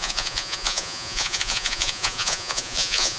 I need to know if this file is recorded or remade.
remade